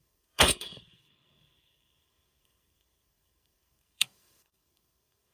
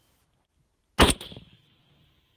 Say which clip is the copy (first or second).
first